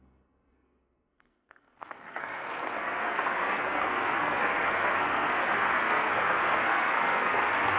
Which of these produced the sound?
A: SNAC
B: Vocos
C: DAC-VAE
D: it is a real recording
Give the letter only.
A